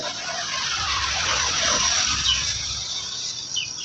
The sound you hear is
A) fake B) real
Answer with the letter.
B